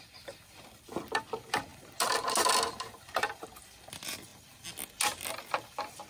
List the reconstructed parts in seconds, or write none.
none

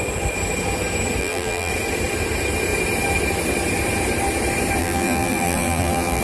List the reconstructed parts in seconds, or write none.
1.2-1.7 (vocoder, BigVGAN v2); 4.8-6.2

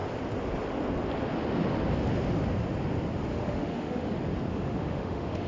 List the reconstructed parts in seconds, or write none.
3.3-4.1 (autoencoder, DAC-VAE); 4.5-5.5

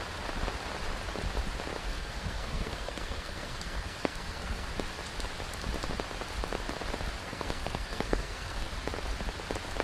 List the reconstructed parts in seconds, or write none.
1.8-4.7 (codec, SNAC); 7.2-8.7

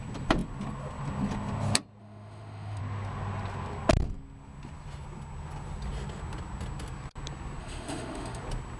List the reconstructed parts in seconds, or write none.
2.0-2.8 (autoencoder, DAC-VAE); 7.6-8.4

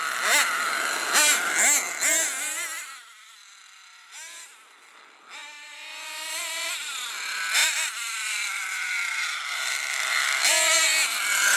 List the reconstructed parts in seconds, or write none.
7.6-10.7 (vocoder, BigVGAN v2)

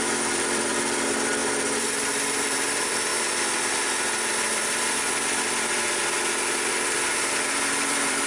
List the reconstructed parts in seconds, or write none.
0.0-1.4 (vocoder, BigVGAN v2); 2.4-8.3